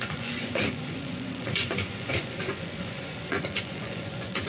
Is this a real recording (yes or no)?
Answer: no